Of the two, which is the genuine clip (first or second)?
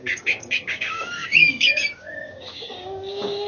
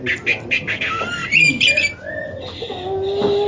second